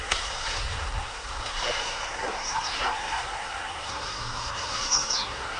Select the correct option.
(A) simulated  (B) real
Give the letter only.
A